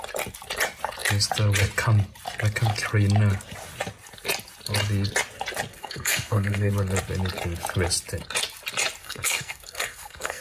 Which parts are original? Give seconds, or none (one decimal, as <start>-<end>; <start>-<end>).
0.0-5.7; 6.7-9.0